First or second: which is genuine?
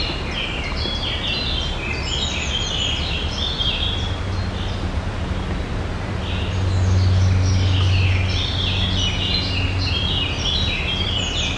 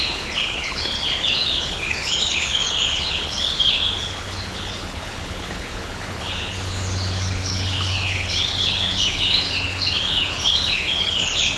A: first